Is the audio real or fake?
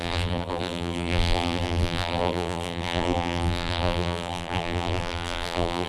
fake